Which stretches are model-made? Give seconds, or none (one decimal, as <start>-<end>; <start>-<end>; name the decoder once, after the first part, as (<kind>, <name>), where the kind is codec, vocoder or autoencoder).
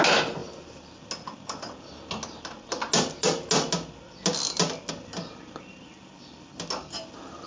none